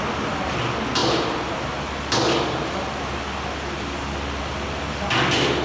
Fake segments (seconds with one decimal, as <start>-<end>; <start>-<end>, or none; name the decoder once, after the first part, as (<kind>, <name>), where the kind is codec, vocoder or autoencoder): none

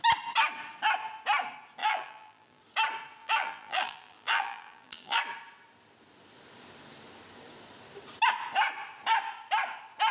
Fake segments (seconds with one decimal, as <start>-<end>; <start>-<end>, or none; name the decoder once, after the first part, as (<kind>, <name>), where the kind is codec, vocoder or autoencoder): 1.8-2.6 (vocoder, BigVGAN v2); 3.2-5.2

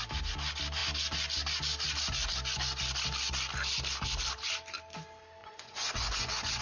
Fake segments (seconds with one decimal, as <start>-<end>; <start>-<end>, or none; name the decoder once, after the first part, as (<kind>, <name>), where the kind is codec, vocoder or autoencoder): 5.4-6.6 (vocoder, Vocos)

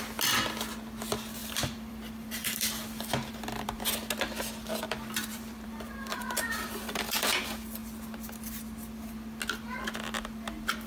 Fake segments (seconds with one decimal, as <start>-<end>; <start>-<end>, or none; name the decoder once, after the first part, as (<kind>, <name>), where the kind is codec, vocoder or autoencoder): 1.4-3.8 (vocoder, BigVGAN v2); 5.3-7.2